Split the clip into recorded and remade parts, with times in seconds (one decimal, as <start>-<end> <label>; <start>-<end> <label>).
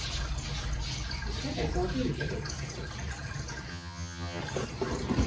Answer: 0.0-3.7 recorded; 3.7-4.4 remade; 4.4-5.3 recorded